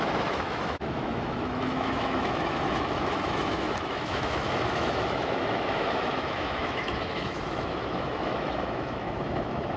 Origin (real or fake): fake